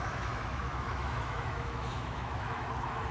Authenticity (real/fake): fake